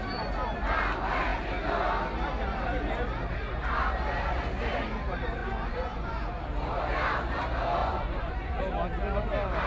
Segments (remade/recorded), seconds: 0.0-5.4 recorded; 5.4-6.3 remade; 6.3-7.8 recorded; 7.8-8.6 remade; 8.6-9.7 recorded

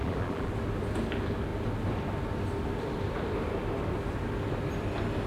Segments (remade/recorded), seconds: 0.0-0.5 remade; 0.5-5.3 recorded